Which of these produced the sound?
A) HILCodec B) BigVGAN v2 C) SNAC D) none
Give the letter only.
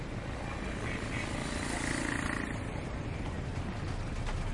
D